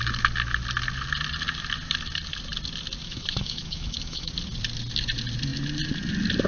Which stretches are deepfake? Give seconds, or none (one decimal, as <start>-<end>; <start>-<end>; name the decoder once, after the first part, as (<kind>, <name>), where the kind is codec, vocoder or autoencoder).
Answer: 3.0-4.3 (autoencoder, DAC-VAE)